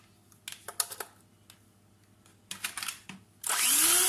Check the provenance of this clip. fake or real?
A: real